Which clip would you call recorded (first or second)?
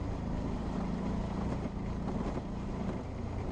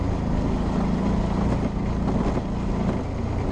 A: second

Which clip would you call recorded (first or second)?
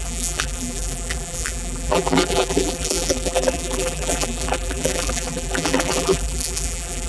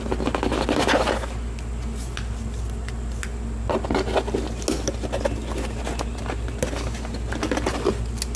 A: second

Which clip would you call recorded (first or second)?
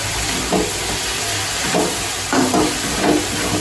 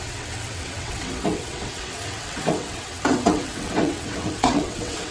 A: first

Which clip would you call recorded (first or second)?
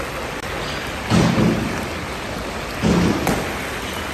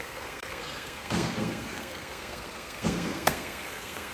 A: first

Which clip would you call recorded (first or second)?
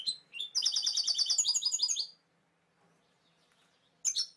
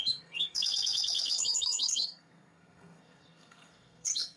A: first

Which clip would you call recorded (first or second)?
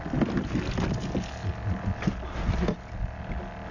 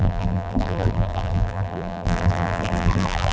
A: first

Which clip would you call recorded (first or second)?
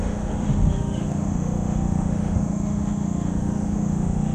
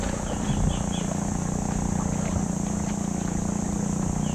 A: second